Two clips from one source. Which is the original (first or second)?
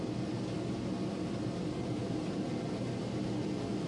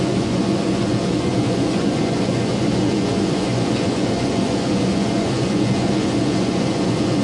first